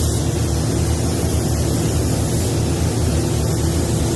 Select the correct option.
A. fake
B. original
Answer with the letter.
B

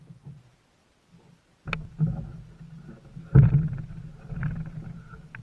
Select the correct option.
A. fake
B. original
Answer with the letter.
B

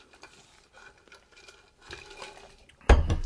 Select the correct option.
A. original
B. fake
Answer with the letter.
A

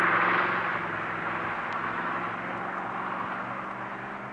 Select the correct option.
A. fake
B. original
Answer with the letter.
B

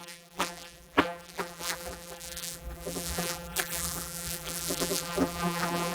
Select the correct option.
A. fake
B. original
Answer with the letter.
A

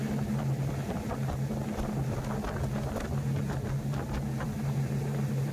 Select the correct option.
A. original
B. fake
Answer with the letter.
A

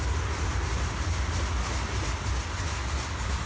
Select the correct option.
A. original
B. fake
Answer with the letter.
A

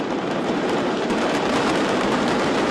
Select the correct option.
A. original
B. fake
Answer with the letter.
B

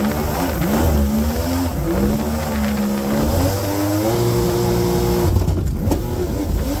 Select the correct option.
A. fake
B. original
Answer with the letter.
B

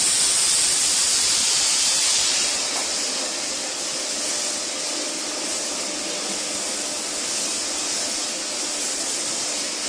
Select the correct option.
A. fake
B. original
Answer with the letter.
B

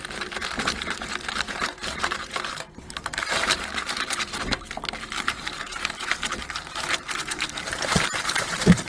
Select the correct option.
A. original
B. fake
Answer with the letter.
B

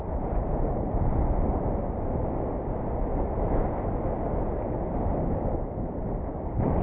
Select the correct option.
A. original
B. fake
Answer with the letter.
A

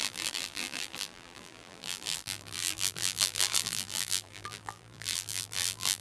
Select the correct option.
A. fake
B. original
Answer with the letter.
A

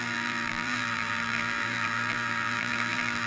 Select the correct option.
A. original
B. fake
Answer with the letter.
B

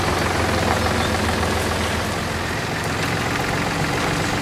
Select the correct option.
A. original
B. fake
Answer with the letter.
A